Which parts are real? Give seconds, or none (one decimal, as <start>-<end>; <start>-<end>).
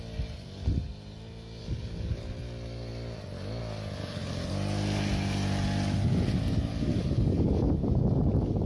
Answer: 0.0-1.6; 2.2-4.0; 4.5-6.7; 7.7-8.7